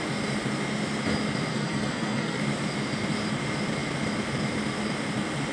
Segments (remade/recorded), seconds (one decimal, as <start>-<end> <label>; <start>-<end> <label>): 0.0-1.5 recorded; 1.5-2.4 remade; 2.4-5.5 recorded